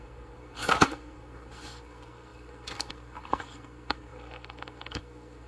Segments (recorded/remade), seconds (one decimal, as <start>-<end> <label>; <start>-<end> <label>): 0.0-5.5 remade